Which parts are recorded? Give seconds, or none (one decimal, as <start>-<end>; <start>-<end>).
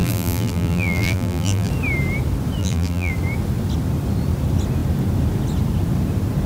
1.7-2.6; 3.1-6.5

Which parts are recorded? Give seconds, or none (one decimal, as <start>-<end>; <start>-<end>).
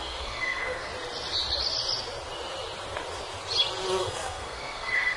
0.9-4.0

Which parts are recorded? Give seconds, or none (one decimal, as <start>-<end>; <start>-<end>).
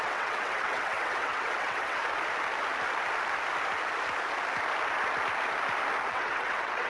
2.0-6.1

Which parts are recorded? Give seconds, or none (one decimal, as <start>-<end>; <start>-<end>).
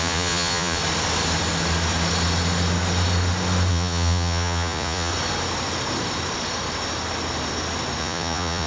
0.8-3.7; 5.1-8.0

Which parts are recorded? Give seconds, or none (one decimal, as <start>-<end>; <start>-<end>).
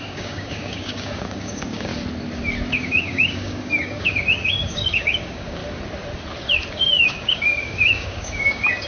1.9-2.7; 5.6-6.7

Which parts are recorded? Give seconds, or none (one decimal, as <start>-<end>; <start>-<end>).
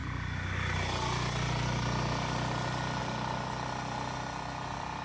0.0-5.0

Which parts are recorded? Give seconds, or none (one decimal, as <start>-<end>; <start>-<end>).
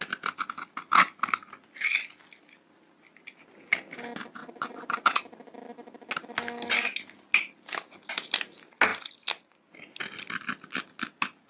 0.0-4.4; 5.2-11.5